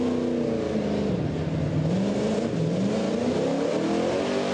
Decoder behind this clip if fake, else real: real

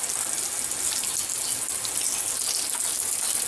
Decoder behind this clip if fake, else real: real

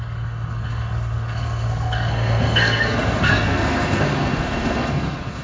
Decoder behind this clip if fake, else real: fake, codec, SNAC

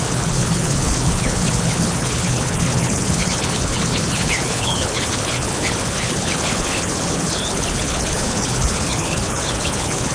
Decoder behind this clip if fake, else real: fake, codec, HILCodec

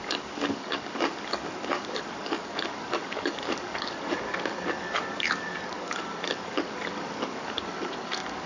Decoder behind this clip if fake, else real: fake, codec, DAC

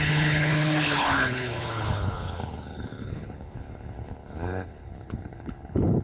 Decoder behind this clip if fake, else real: fake, codec, HILCodec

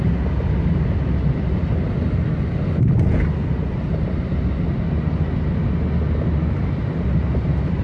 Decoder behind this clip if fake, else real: real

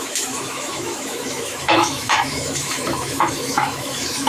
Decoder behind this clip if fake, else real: fake, autoencoder, DAC-VAE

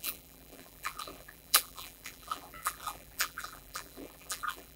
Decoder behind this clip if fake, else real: fake, vocoder, BigVGAN v2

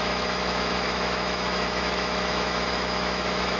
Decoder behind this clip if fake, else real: fake, autoencoder, DAC-VAE